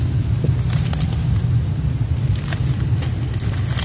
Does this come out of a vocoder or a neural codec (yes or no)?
no